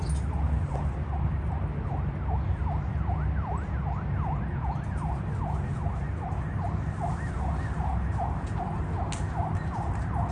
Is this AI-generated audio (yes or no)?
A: no